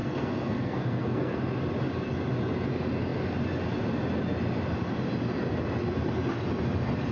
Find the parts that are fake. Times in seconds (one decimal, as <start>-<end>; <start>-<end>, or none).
0.0-1.4